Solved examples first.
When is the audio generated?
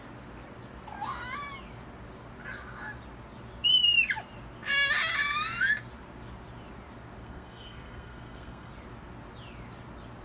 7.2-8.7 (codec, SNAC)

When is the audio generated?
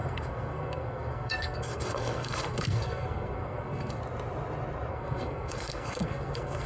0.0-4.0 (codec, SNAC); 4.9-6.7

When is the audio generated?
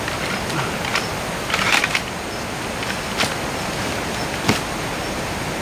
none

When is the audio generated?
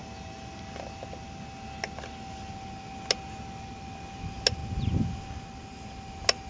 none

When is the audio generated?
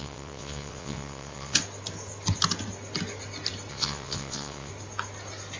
0.0-1.6 (vocoder, WaveNeXt); 3.7-4.7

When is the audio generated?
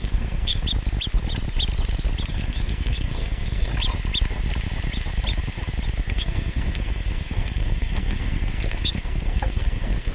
0.0-0.6 (codec, SNAC); 2.3-3.7; 6.1-10.1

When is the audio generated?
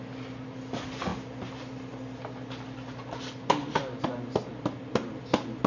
none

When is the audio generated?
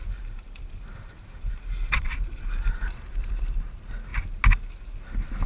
0.0-3.3 (vocoder, BigVGAN v2)